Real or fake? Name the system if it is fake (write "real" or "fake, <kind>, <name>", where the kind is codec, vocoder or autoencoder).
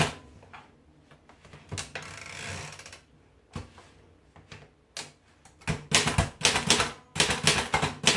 real